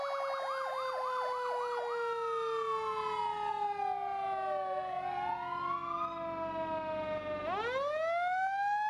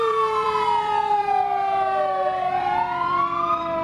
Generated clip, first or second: second